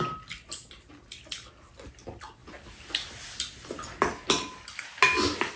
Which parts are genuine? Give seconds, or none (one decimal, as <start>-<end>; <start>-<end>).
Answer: 0.0-5.6